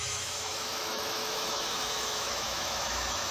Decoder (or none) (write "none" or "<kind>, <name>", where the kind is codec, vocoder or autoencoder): autoencoder, DAC-VAE